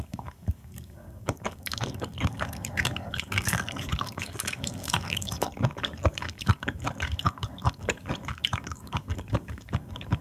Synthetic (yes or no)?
yes